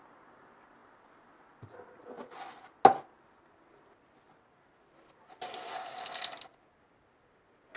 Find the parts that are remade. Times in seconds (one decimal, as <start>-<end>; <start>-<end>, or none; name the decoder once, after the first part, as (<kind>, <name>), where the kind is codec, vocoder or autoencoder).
none

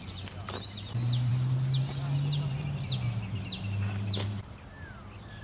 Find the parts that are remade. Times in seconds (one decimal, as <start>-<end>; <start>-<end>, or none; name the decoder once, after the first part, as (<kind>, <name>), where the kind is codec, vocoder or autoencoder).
none

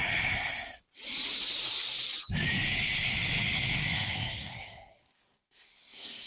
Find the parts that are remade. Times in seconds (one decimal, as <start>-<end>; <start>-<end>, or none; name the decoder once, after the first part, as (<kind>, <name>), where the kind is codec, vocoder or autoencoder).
3.8-6.3 (codec, SNAC)

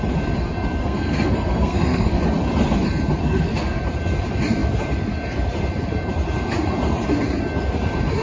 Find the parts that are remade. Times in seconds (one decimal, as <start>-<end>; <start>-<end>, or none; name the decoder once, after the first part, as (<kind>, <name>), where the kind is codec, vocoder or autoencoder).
0.8-2.2 (codec, SNAC); 3.2-3.8

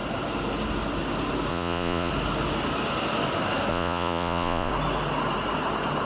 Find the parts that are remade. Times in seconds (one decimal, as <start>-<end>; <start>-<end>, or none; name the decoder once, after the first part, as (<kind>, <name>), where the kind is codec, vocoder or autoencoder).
1.5-2.1 (vocoder, Vocos); 3.7-4.7

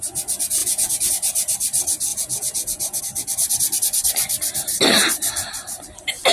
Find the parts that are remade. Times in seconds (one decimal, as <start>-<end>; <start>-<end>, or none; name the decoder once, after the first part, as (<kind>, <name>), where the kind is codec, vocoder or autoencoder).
0.6-1.1 (vocoder, Vocos); 2.1-3.0

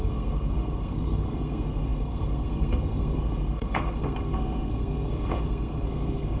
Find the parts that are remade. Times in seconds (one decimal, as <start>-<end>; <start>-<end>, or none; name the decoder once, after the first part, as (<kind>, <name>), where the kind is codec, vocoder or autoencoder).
0.0-6.4 (codec, SNAC)

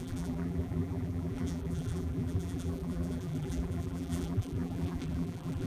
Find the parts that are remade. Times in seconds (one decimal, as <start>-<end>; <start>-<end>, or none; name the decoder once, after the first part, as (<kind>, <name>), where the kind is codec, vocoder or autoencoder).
0.0-5.7 (vocoder, BigVGAN v2)